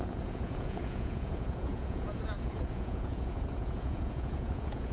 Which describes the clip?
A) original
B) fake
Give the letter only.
B